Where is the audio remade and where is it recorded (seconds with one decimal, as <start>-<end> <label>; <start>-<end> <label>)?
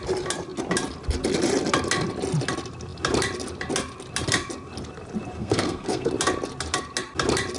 0.0-5.4 recorded; 5.4-6.1 remade; 6.1-7.6 recorded